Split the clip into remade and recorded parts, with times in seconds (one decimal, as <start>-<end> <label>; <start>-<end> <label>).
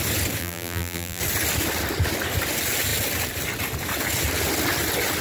0.0-0.4 recorded; 0.4-1.2 remade; 1.2-5.2 recorded